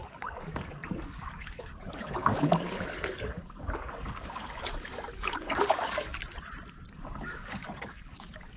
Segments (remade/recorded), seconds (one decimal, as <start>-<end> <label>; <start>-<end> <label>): 0.0-6.1 remade; 6.1-6.9 recorded; 6.9-8.6 remade